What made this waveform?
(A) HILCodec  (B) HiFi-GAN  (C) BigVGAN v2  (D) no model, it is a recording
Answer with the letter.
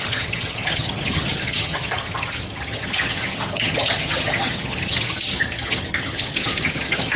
B